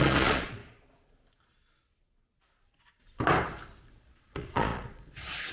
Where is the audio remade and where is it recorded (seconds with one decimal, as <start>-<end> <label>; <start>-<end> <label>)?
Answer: 0.0-0.6 remade; 0.6-3.9 recorded; 3.9-5.5 remade